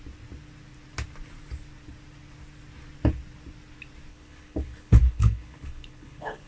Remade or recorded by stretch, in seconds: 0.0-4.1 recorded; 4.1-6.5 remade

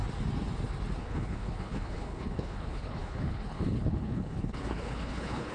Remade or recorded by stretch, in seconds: 0.0-1.0 recorded; 1.0-5.5 remade

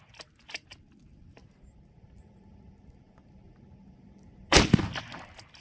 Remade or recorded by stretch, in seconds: 0.0-5.6 recorded

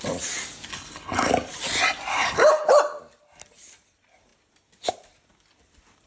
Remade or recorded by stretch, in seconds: 0.0-0.7 recorded; 0.7-1.3 remade; 1.3-2.1 recorded; 2.1-2.7 remade; 2.7-6.1 recorded

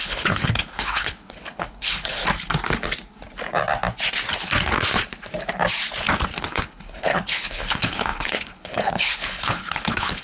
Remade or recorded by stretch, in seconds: 0.0-2.2 remade; 2.2-6.4 recorded; 6.4-10.2 remade